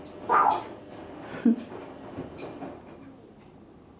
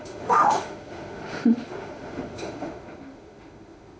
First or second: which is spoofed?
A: second